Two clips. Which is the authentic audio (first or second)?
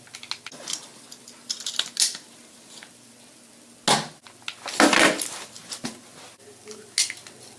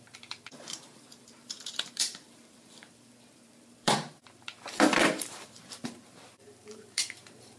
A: first